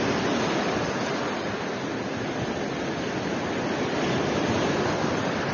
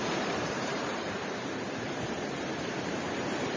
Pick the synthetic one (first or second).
second